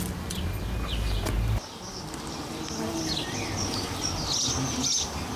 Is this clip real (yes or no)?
yes